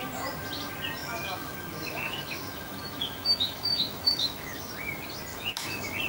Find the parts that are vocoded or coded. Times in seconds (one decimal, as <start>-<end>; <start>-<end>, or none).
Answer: 1.0-4.7; 5.3-6.1